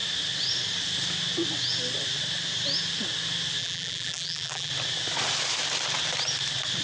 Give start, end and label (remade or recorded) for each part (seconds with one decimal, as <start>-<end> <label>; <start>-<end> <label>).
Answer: 0.0-3.6 recorded; 3.6-4.7 remade; 4.7-6.8 recorded